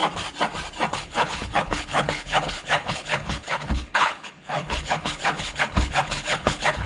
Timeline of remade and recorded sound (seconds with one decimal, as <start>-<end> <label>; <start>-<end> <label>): 0.0-0.9 recorded; 0.9-6.9 remade